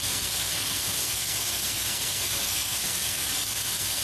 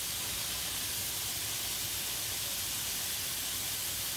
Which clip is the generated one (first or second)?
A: first